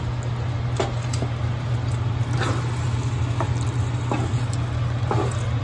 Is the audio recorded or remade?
recorded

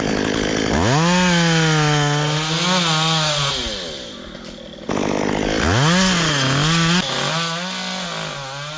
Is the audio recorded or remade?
recorded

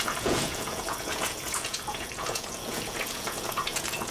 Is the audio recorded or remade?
remade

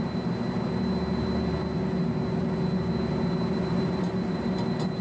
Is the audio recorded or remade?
recorded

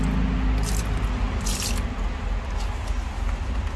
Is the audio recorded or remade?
recorded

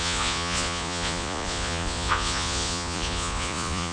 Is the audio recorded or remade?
remade